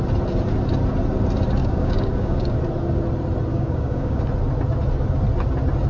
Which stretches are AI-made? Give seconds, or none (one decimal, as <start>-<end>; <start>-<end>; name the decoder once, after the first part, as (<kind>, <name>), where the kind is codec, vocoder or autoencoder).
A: 1.6-2.5 (codec, DAC); 3.5-4.2